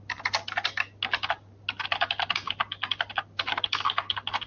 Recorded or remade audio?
recorded